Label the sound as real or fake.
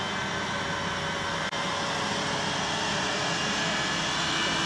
real